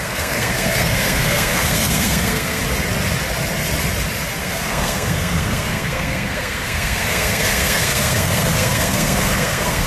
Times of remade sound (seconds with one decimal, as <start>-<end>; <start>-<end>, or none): 0.0-2.6; 4.4-9.9